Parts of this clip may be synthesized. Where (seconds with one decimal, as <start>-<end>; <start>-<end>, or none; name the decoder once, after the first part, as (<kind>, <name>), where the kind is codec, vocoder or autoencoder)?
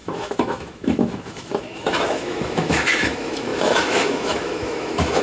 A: 0.0-5.2 (autoencoder, DAC-VAE)